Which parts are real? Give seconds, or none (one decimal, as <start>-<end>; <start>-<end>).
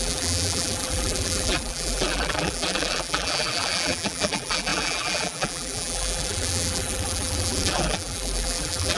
none